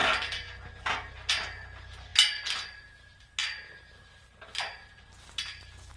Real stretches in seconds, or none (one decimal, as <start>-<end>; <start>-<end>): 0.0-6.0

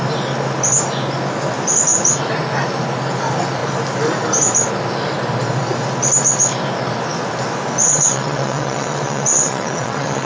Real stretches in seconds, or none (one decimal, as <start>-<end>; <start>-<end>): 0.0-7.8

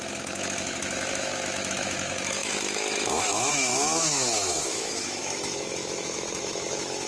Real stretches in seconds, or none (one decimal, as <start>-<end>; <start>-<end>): none

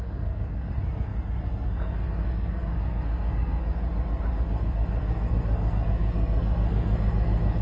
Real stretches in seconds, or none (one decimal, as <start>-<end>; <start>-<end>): 3.8-4.3

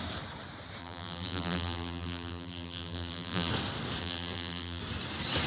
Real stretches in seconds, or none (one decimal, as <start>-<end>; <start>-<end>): 0.0-0.8; 3.5-4.0; 4.8-5.5

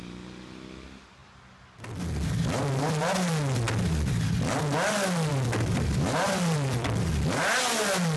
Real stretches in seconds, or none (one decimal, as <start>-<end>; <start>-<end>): 0.0-5.3; 7.1-8.2